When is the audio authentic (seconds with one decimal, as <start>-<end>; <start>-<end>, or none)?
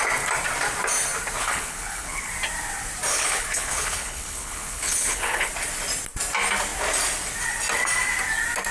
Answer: 0.0-1.4; 2.3-3.1; 5.5-8.7